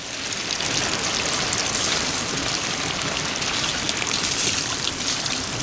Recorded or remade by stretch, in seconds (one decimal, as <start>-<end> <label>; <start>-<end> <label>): 0.0-5.6 recorded